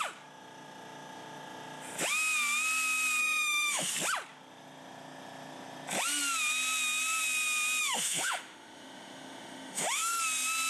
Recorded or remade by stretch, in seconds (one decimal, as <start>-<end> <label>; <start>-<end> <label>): 0.0-3.2 recorded; 3.2-3.9 remade; 3.9-7.8 recorded; 7.8-10.2 remade; 10.2-10.7 recorded